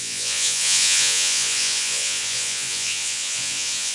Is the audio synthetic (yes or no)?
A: yes